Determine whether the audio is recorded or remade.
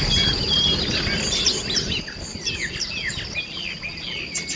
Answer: recorded